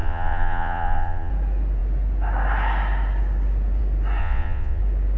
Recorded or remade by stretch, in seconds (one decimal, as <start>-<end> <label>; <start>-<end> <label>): 0.0-1.3 remade; 1.3-4.2 recorded; 4.2-4.8 remade; 4.8-5.2 recorded